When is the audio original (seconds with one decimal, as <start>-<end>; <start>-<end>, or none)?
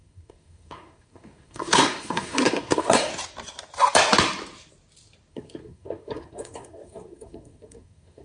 3.1-5.3